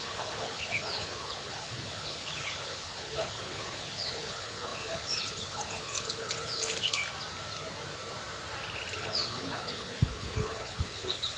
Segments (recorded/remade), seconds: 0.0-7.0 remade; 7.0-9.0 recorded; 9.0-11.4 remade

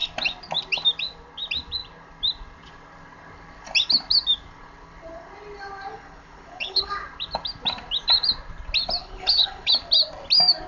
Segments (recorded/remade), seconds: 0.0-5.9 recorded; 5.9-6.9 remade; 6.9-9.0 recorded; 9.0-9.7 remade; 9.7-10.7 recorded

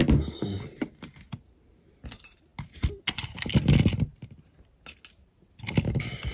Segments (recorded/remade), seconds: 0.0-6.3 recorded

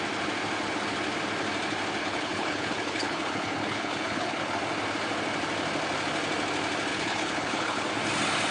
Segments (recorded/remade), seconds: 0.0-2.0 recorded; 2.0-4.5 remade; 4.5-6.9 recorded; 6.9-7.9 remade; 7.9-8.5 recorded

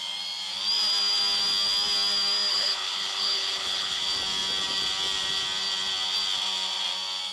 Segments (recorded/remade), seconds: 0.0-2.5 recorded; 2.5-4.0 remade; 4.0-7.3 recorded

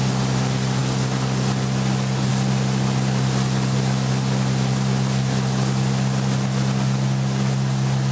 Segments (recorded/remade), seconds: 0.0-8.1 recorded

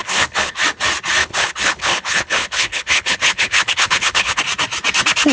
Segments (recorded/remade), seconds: 0.0-0.6 remade; 0.6-1.2 recorded; 1.2-4.4 remade; 4.4-5.3 recorded